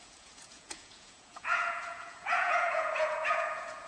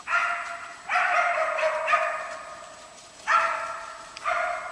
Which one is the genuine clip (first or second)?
second